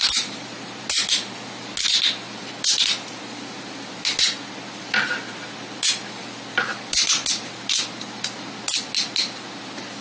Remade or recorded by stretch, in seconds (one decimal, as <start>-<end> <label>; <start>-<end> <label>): 0.0-10.0 recorded